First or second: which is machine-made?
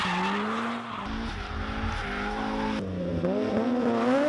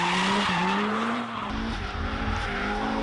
second